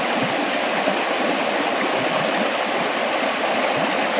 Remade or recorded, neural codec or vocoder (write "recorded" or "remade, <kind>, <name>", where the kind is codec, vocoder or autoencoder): recorded